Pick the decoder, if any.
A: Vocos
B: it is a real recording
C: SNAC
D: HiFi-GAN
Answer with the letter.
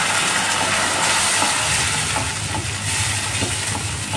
B